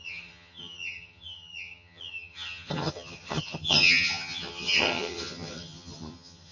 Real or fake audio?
fake